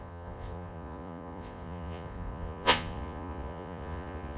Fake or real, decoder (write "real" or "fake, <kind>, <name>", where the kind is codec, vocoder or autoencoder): fake, vocoder, Vocos